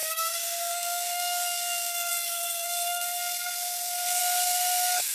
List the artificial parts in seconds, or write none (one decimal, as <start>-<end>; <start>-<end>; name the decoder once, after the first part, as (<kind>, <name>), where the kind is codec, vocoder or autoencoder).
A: 0.0-5.1 (codec, SNAC)